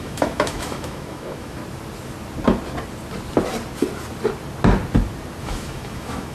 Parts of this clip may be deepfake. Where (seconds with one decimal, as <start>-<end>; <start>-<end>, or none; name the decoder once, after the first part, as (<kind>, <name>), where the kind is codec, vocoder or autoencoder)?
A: 0.0-1.6 (autoencoder, DAC-VAE); 5.4-6.3